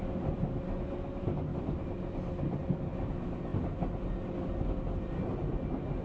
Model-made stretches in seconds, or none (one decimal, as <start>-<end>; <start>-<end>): none